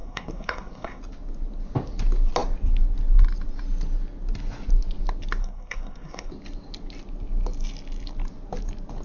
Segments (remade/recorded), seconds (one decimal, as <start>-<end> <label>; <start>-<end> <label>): 0.0-1.0 remade; 1.0-5.4 recorded; 5.4-6.3 remade; 6.3-9.0 recorded